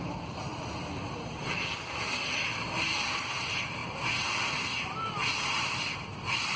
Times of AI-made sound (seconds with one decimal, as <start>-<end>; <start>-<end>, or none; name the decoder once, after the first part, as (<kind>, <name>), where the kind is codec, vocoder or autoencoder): 0.0-6.6 (vocoder, BigVGAN v2)